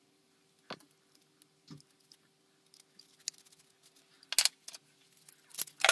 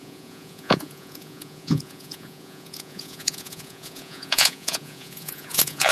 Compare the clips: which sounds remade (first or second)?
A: second